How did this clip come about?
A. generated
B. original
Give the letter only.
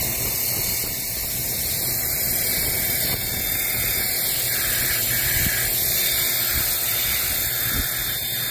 B